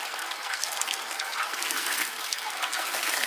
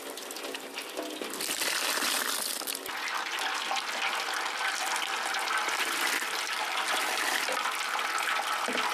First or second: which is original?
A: second